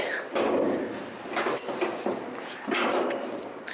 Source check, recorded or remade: recorded